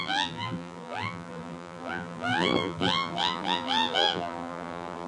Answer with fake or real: fake